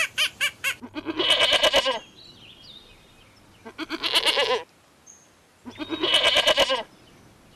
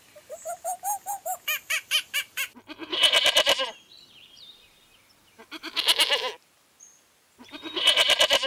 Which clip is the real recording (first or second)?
first